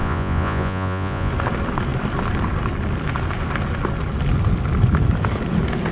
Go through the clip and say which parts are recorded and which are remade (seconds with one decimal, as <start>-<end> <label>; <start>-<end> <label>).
0.0-1.3 remade; 1.3-5.9 recorded